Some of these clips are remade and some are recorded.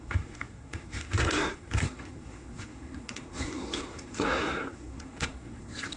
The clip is remade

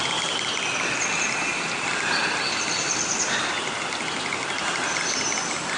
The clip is recorded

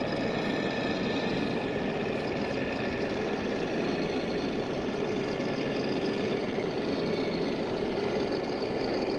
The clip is recorded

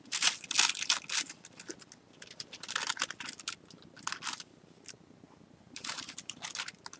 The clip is recorded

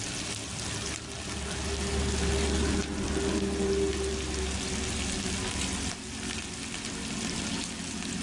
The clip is recorded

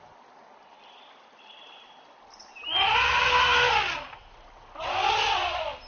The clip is recorded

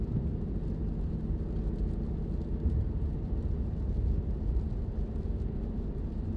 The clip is recorded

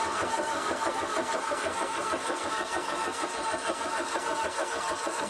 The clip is remade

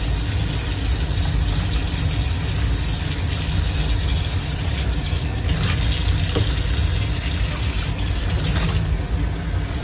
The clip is recorded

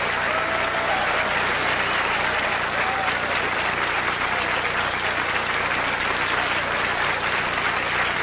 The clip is recorded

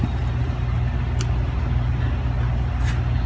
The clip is recorded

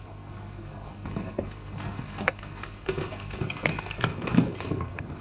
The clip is remade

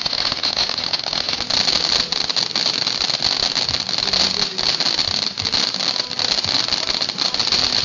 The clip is recorded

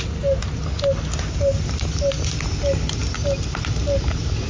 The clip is recorded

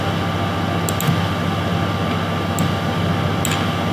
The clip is recorded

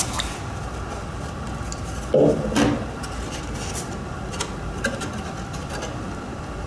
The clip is recorded